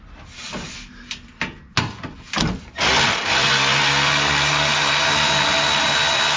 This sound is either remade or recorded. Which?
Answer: recorded